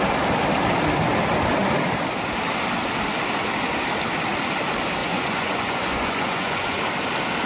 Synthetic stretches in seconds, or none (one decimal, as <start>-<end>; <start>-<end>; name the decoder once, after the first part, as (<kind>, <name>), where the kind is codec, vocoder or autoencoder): 5.0-6.8 (vocoder, Vocos)